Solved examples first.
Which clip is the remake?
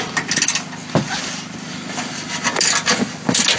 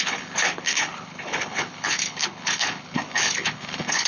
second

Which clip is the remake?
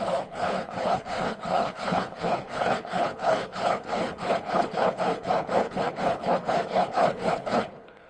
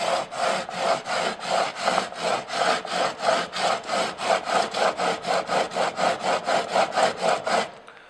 first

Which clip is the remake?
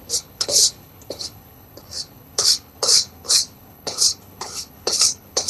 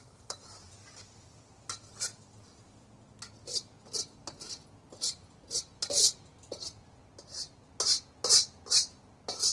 first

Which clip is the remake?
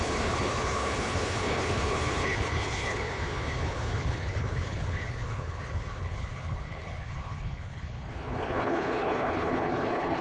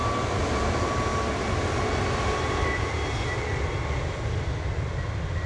first